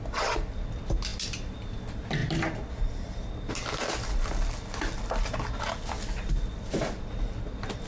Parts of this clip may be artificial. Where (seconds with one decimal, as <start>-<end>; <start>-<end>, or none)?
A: none